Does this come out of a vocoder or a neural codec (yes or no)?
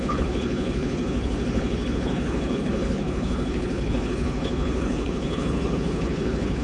yes